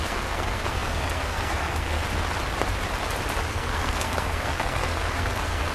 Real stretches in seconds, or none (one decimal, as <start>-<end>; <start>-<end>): 2.0-3.5